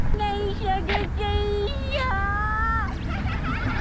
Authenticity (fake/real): real